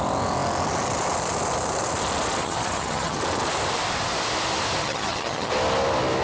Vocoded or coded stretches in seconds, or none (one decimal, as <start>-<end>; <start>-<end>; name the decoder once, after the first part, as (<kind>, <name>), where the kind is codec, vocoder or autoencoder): 2.4-3.2 (vocoder, HiFi-GAN); 4.8-5.5